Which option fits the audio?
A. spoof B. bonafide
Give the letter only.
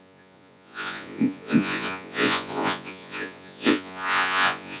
A